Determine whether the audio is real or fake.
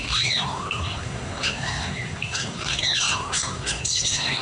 fake